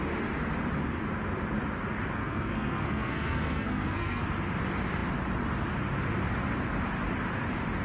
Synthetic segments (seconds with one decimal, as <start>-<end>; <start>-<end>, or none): 2.2-4.2